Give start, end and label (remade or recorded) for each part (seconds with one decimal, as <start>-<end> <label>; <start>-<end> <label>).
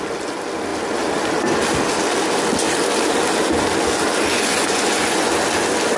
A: 0.0-4.3 recorded; 4.3-5.3 remade; 5.3-6.0 recorded